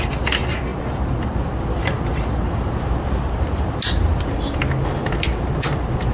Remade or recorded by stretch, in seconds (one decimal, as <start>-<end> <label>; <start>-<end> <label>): 0.0-6.1 recorded